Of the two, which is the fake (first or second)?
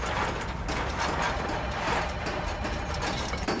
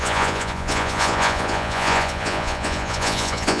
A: second